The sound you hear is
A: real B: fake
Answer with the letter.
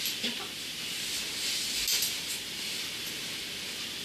A